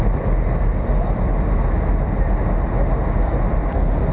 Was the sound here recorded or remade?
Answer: recorded